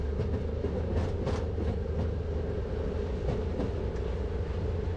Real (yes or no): yes